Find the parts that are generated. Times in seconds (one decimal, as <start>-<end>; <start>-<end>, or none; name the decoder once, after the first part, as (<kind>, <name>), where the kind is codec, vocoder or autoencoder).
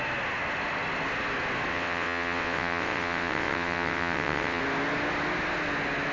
1.7-4.6 (vocoder, WaveNeXt)